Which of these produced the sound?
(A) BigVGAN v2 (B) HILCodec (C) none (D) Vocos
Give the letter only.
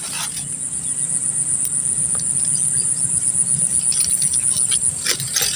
C